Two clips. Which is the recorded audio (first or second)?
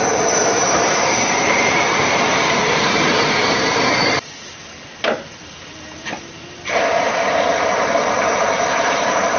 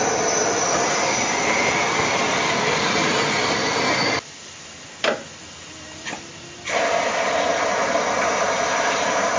second